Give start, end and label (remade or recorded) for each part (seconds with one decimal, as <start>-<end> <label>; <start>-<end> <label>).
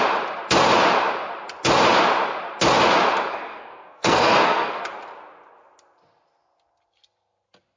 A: 0.0-3.3 recorded; 3.3-4.8 remade; 4.8-7.8 recorded